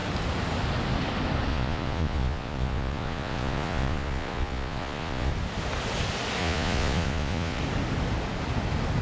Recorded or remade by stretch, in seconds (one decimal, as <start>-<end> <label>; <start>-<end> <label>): 0.0-1.5 recorded; 1.5-5.3 remade; 5.3-6.4 recorded; 6.4-7.6 remade; 7.6-9.0 recorded